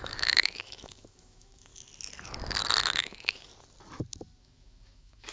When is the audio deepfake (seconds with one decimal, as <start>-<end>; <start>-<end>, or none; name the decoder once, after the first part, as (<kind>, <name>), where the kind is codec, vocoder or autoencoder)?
0.0-1.7 (autoencoder, DAC-VAE); 3.0-3.5; 4.4-5.3

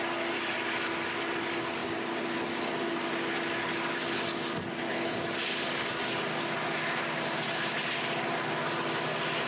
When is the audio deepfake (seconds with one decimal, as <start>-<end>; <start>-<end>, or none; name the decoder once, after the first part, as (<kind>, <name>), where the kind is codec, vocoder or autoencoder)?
none

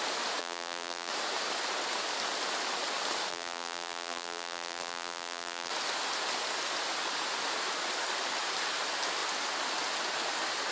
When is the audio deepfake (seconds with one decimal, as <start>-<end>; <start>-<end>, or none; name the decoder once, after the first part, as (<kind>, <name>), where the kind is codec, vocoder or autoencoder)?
0.4-1.1 (vocoder, BigVGAN v2); 3.3-5.7

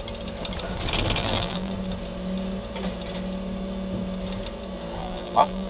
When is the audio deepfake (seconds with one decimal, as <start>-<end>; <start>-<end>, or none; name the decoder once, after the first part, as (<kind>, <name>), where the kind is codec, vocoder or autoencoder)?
1.2-1.7 (vocoder, BigVGAN v2); 5.0-5.7

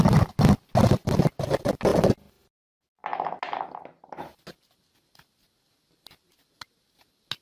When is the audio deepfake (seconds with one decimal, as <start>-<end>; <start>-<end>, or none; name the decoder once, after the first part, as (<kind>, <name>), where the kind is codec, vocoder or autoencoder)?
none

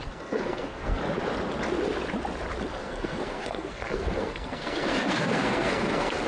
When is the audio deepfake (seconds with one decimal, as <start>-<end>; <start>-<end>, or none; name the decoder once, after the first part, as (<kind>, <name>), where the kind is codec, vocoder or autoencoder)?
0.0-1.0 (codec, SNAC); 2.8-6.3

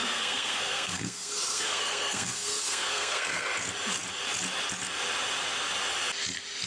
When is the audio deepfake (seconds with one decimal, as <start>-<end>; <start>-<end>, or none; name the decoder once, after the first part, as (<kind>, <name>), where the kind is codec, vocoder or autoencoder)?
0.0-3.5 (codec, SNAC)